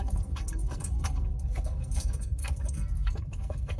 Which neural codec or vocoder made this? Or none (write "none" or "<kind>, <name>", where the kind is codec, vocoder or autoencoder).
codec, SNAC